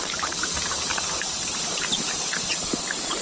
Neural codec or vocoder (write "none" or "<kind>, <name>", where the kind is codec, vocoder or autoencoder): vocoder, BigVGAN v2